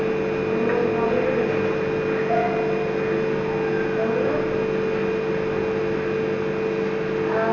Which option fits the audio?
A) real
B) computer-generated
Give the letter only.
A